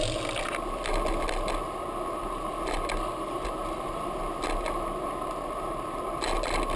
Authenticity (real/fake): real